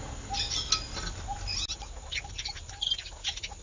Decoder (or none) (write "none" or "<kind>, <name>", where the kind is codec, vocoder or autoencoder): none